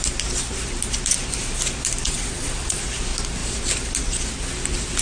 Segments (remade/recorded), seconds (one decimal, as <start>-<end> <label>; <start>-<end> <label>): 0.0-2.0 recorded; 2.0-2.8 remade; 2.8-5.0 recorded